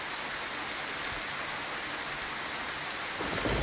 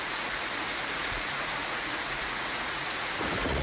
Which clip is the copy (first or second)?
second